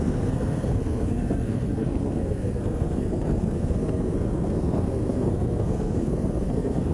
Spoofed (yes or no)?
yes